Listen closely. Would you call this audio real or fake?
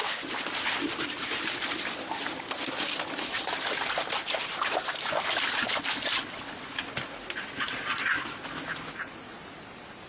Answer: real